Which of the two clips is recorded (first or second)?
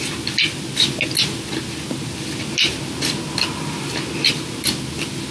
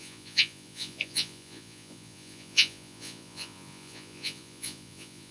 first